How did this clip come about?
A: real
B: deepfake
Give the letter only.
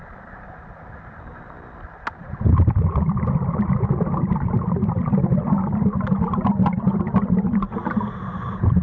A